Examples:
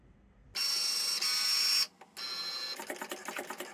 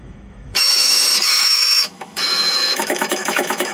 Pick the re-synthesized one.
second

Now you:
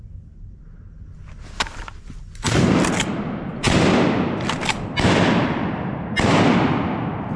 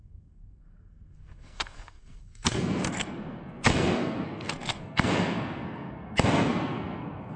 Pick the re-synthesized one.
second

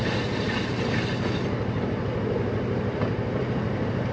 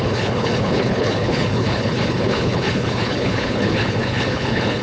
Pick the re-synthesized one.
second